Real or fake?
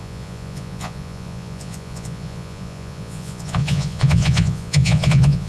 fake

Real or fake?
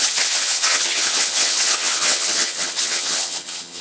fake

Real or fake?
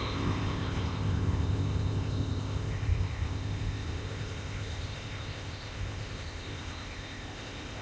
fake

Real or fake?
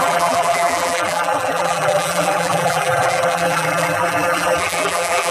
fake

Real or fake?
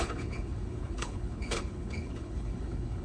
fake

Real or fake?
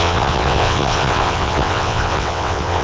fake